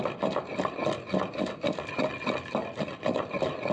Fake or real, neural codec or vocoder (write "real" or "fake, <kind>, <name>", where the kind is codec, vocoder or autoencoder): real